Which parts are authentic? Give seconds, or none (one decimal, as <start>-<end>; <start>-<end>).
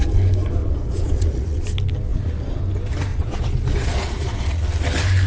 0.0-0.6; 1.6-2.1; 2.6-3.1; 4.6-5.3